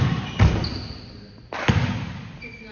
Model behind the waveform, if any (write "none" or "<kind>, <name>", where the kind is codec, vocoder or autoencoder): none